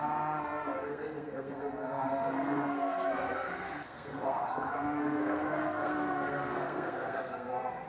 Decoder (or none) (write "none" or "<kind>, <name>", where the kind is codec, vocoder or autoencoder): codec, SNAC